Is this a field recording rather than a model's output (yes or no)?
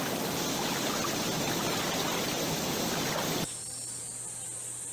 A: yes